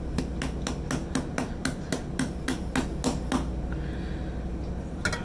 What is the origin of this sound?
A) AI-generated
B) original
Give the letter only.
B